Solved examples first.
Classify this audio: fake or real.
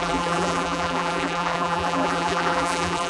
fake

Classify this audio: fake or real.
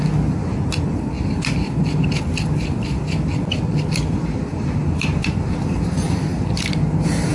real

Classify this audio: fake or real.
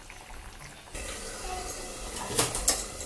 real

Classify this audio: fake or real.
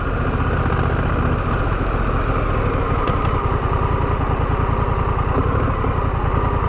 real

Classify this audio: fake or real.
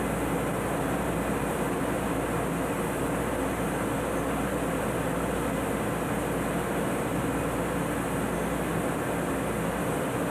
real